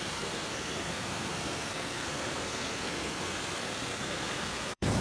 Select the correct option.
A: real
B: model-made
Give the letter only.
B